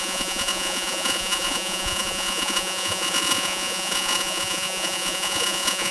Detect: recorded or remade remade